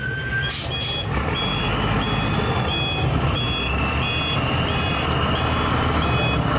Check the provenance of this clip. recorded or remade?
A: recorded